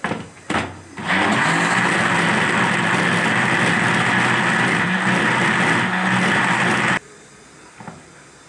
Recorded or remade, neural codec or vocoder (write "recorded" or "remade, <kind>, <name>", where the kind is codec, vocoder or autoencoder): recorded